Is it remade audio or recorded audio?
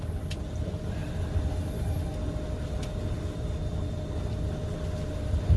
recorded